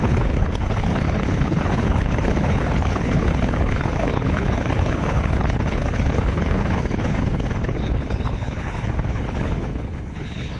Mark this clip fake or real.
fake